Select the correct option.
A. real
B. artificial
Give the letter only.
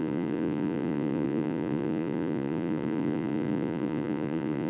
B